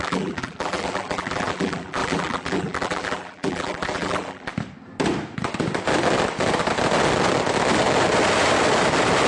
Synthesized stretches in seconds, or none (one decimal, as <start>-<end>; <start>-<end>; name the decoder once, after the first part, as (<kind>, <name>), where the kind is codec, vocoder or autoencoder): 0.0-4.5 (vocoder, BigVGAN v2)